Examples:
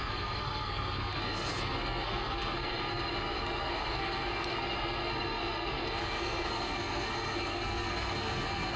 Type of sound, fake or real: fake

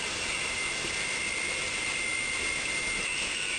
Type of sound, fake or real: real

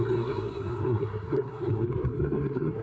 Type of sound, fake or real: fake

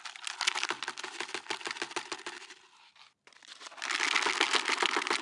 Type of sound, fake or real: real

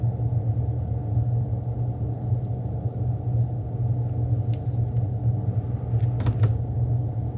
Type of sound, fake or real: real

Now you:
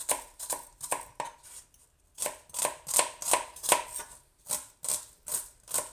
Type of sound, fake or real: real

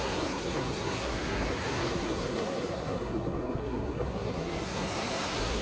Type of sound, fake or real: fake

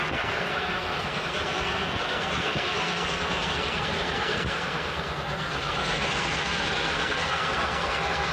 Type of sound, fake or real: fake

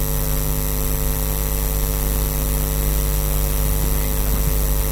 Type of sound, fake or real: real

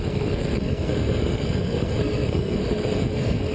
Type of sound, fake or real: fake